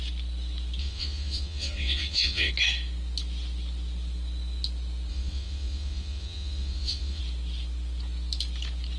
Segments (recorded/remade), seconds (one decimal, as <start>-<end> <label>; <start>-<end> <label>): 0.0-0.8 recorded; 0.8-2.5 remade; 2.5-5.1 recorded; 5.1-7.2 remade; 7.2-9.0 recorded